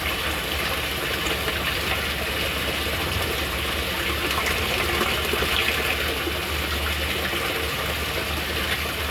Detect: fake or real real